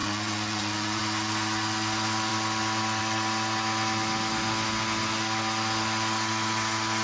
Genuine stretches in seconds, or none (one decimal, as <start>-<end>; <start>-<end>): 1.0-7.0